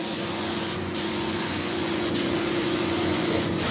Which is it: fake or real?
fake